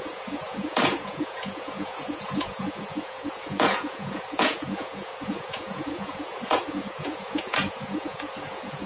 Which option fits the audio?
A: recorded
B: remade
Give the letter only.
B